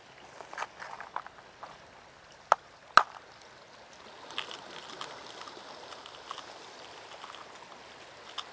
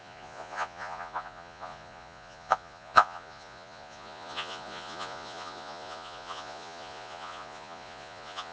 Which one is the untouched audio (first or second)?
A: first